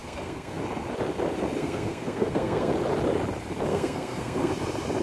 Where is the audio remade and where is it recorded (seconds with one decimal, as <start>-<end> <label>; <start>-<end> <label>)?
0.0-0.6 remade; 0.6-1.6 recorded; 1.6-2.7 remade; 2.7-3.7 recorded; 3.7-4.5 remade; 4.5-5.0 recorded